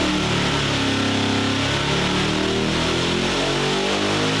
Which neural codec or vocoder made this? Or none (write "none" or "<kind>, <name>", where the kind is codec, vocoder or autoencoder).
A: none